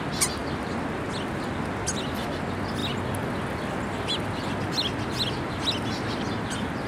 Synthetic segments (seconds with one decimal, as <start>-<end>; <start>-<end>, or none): none